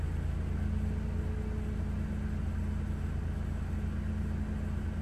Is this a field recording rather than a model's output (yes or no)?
yes